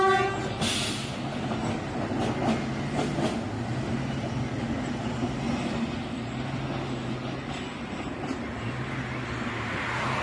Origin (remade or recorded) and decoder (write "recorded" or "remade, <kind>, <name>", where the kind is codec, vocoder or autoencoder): recorded